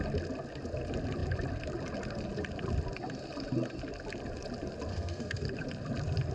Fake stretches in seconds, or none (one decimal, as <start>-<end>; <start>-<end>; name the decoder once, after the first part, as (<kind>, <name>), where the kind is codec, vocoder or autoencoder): 4.9-5.5 (codec, SNAC)

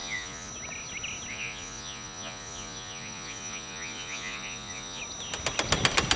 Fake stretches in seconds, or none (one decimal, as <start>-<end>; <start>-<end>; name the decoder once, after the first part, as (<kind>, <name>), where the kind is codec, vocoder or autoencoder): 0.0-0.5 (vocoder, Vocos); 1.3-5.0